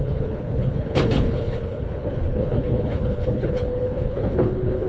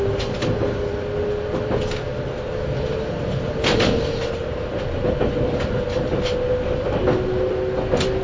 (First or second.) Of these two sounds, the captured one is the second